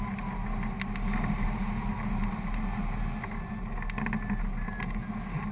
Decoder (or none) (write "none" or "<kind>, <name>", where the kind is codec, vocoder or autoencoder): none